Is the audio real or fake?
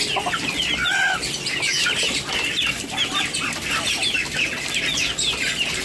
real